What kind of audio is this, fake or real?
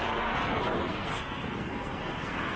fake